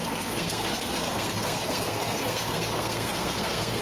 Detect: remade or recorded remade